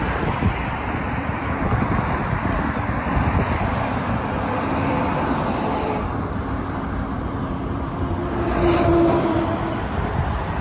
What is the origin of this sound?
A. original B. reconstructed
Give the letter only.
B